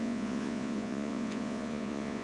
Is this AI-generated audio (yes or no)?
yes